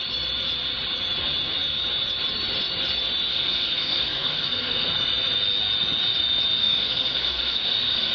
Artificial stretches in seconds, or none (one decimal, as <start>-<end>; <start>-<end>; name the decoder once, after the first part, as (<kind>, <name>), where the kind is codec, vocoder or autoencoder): 3.3-4.9 (codec, SNAC); 6.6-8.1